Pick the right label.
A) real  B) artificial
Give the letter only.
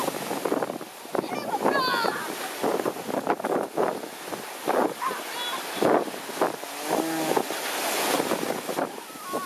A